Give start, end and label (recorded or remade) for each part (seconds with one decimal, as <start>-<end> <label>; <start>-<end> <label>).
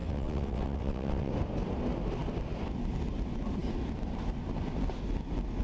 0.0-1.3 remade; 1.3-5.6 recorded